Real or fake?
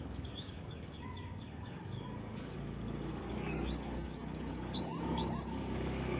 fake